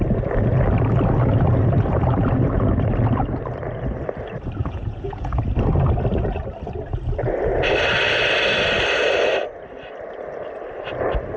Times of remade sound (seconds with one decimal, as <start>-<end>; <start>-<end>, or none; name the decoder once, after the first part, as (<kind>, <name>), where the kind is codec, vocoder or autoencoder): 4.6-5.4 (vocoder, Vocos)